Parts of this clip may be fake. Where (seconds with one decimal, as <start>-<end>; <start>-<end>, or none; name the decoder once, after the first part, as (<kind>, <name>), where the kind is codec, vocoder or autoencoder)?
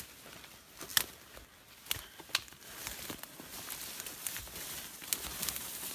none